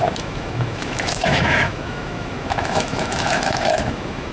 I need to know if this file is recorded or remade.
remade